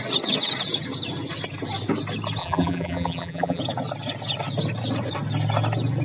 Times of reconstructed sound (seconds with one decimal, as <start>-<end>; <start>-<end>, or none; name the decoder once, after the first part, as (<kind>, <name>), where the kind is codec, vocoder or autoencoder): 2.4-3.6 (vocoder, BigVGAN v2)